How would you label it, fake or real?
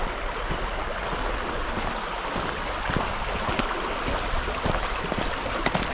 real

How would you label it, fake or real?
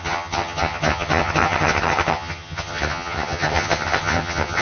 fake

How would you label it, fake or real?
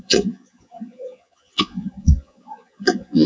fake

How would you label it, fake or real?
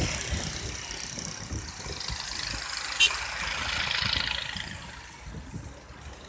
real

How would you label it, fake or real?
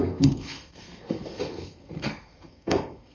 fake